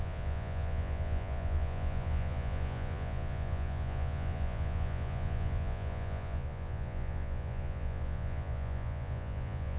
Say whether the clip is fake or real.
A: fake